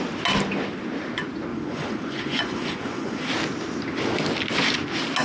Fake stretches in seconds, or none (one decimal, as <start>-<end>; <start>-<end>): 1.5-3.3